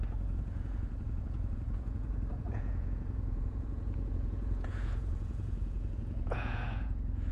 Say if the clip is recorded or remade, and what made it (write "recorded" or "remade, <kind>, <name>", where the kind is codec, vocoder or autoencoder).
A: remade, vocoder, Vocos